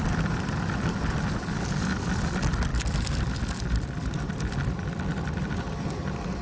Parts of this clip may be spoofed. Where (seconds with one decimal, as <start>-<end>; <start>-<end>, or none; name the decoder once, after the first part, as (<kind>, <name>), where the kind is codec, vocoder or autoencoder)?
none